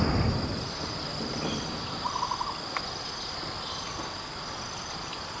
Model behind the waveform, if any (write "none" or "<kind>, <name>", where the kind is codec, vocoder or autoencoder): none